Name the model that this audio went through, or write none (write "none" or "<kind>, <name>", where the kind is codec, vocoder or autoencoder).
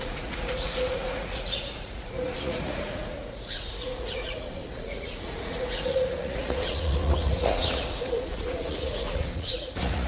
vocoder, Vocos